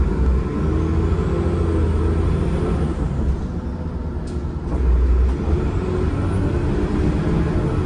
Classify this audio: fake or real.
real